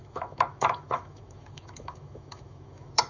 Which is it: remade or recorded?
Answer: remade